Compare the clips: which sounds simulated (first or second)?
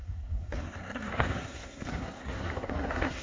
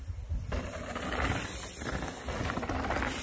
first